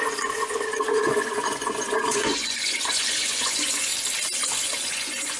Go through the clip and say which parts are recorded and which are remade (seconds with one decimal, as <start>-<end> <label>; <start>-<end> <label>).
0.0-3.9 remade; 3.9-4.6 recorded; 4.6-5.4 remade